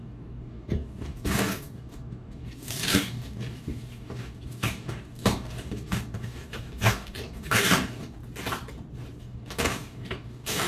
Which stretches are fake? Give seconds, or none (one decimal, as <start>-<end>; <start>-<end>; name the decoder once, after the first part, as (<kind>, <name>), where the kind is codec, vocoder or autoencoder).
0.0-8.2 (codec, DAC); 9.2-10.7